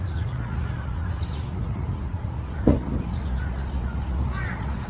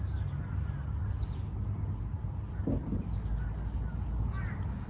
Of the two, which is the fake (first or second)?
first